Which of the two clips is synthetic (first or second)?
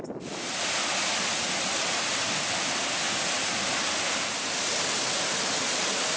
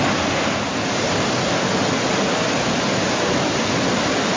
first